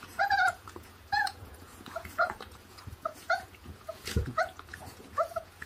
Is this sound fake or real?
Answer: fake